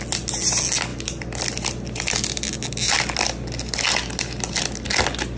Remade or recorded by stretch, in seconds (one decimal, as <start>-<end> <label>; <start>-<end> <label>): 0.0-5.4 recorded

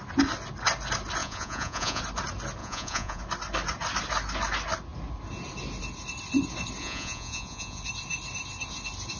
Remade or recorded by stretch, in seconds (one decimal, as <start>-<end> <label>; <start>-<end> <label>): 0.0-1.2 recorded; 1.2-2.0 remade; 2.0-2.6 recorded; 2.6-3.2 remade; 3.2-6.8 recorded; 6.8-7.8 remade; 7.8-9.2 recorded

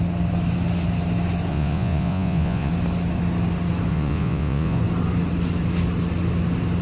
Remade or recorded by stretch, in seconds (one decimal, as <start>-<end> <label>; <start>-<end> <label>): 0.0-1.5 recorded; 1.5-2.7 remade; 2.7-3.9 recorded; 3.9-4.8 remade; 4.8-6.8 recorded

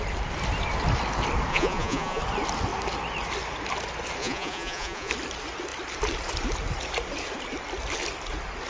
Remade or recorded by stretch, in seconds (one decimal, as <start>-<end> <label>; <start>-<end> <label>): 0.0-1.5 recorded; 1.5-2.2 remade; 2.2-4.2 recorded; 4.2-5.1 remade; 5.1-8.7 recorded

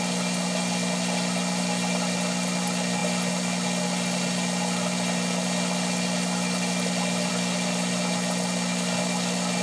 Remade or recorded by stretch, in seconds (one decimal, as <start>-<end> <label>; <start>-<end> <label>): 0.0-9.6 recorded